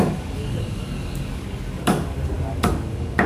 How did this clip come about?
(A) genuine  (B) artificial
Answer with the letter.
B